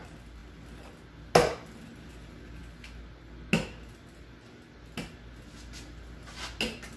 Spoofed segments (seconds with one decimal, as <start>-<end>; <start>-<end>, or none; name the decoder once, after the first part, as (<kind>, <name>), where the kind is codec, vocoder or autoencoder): none